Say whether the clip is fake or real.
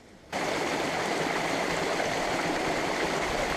real